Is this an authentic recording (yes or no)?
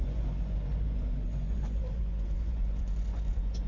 no